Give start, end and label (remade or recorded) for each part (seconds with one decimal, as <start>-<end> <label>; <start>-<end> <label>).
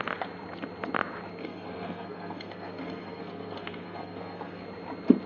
0.0-1.4 recorded; 1.4-4.6 remade; 4.6-5.3 recorded